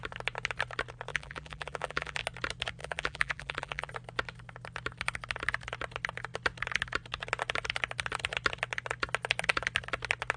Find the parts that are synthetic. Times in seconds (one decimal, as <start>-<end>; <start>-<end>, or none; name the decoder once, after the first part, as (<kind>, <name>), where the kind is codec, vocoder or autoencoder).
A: 1.1-2.2 (vocoder, BigVGAN v2); 2.8-3.9